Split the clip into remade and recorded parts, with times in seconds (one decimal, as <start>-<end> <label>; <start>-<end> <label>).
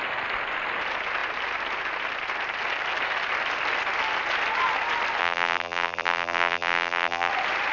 0.0-5.2 recorded; 5.2-7.3 remade; 7.3-7.7 recorded